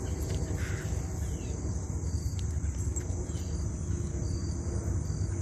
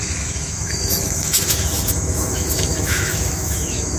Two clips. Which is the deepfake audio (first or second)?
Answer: second